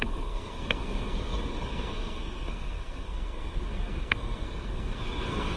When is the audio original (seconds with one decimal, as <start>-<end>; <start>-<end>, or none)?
none